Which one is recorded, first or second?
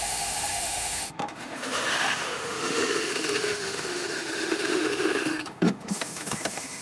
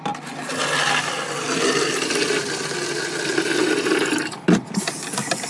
second